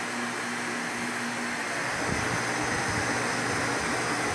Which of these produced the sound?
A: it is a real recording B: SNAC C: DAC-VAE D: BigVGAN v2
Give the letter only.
A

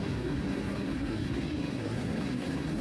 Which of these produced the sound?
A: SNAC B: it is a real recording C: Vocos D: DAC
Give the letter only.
A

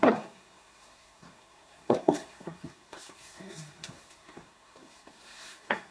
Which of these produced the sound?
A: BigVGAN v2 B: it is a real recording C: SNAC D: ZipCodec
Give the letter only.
C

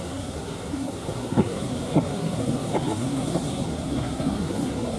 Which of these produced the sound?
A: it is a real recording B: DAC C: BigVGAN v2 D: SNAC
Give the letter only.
D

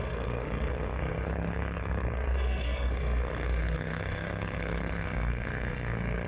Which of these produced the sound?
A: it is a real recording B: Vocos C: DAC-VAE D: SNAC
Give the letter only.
D